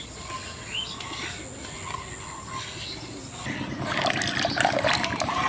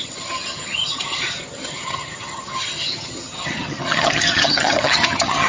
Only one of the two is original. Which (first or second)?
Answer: first